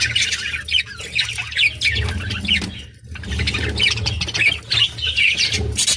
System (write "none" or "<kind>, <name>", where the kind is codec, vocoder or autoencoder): none